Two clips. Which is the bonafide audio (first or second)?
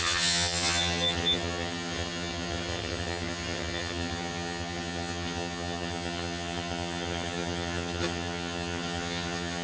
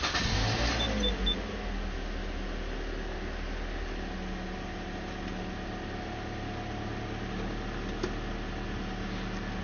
second